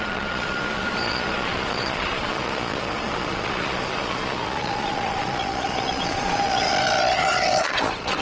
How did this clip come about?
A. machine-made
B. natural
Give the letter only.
A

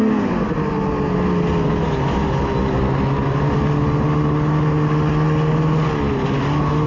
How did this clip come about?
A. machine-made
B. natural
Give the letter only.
B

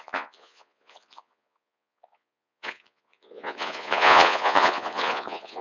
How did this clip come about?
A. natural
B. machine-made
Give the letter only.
B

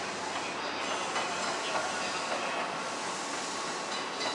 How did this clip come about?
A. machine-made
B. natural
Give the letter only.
B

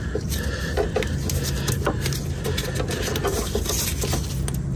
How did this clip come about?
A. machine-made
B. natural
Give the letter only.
B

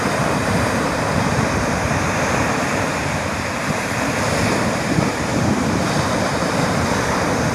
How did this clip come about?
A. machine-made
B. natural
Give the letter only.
A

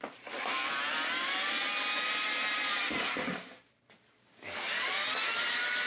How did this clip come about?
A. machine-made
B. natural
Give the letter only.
B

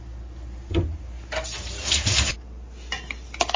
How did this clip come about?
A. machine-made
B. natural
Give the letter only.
B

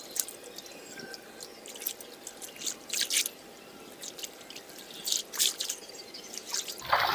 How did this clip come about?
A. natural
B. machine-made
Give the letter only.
A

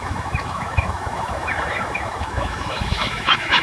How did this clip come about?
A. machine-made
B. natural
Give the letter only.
A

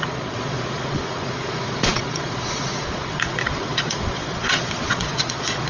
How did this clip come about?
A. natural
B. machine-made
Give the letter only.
B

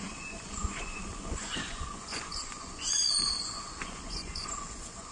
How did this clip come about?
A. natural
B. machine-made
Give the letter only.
B